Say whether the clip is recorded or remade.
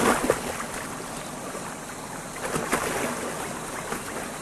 recorded